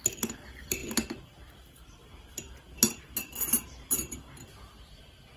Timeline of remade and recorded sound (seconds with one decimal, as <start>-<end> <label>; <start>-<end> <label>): 0.0-5.4 recorded